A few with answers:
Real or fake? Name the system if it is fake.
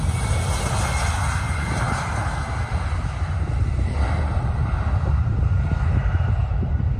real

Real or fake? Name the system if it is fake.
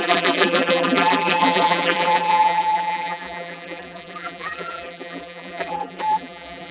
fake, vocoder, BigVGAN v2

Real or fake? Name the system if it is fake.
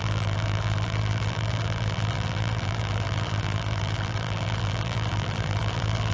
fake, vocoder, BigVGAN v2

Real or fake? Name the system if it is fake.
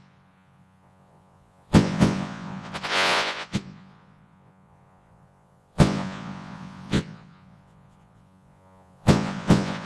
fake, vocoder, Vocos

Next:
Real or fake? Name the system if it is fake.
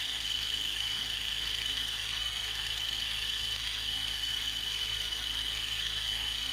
fake, codec, SNAC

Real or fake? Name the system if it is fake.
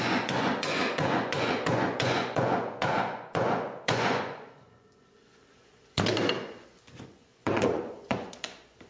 fake, vocoder, Vocos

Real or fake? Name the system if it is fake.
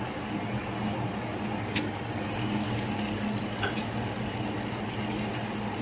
real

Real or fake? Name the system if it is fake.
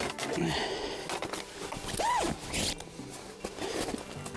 real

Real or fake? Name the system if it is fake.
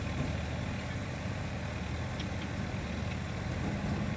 real